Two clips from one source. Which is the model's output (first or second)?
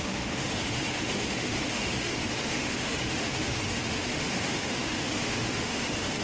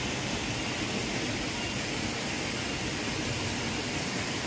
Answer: first